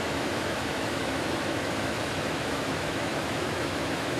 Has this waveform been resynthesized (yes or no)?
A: yes